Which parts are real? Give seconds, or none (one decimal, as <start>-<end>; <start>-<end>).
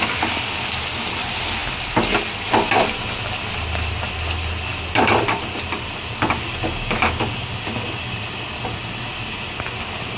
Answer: 0.0-10.2